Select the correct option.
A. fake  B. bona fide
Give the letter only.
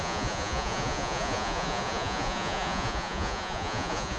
A